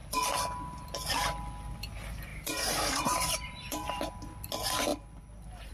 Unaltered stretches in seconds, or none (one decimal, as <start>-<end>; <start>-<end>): 0.0-2.3; 4.1-5.7